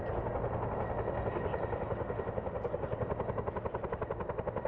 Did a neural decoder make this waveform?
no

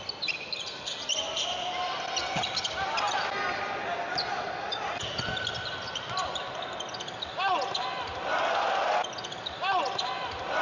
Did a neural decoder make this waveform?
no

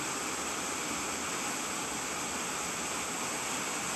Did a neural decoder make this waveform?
no